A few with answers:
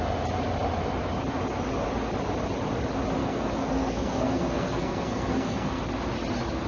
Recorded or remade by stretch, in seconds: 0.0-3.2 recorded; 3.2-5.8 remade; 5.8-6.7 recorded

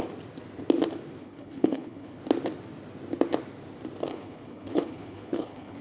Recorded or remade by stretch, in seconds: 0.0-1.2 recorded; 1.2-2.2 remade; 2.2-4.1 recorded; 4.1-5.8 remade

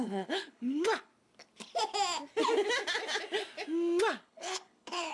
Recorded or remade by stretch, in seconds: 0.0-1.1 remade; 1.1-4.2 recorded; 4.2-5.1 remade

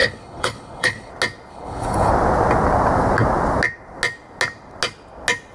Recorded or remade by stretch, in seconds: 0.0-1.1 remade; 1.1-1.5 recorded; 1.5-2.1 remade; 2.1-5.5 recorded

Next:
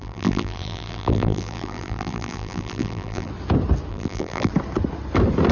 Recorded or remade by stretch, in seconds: 0.0-3.3 remade; 3.3-3.9 recorded; 3.9-4.5 remade; 4.5-5.5 recorded